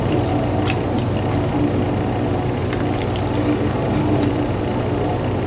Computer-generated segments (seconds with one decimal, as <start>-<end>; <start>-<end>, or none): none